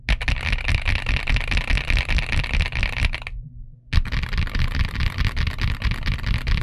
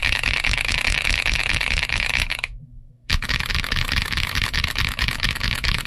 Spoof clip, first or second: second